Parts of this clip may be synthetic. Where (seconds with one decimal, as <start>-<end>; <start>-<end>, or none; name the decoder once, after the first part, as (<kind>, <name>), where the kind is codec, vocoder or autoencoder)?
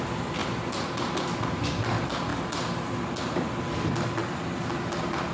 0.4-1.2 (vocoder, BigVGAN v2); 2.3-3.0